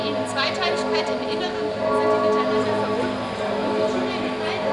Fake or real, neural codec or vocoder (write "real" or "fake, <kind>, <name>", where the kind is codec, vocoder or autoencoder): real